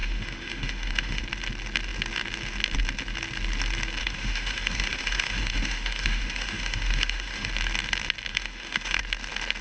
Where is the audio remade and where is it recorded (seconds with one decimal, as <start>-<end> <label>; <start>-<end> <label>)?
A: 0.0-1.2 remade; 1.2-4.0 recorded; 4.0-7.5 remade; 7.5-8.3 recorded; 8.3-9.0 remade; 9.0-9.6 recorded